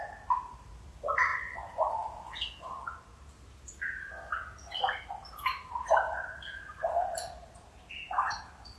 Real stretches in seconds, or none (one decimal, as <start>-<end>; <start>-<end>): 0.0-1.3; 2.1-8.8